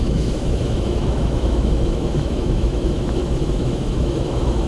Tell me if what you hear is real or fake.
fake